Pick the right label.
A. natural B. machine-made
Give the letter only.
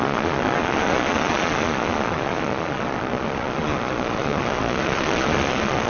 B